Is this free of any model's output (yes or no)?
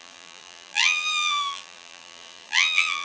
no